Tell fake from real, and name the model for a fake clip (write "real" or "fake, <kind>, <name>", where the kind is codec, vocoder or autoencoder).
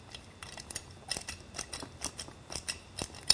real